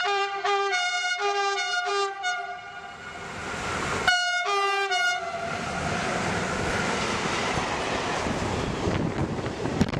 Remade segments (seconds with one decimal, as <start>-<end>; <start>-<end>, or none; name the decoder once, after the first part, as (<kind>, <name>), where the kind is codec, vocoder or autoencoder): 0.0-1.9 (vocoder, BigVGAN v2); 9.2-10.0